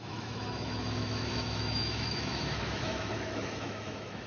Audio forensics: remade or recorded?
remade